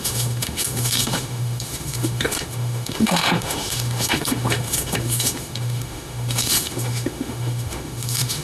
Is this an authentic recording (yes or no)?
no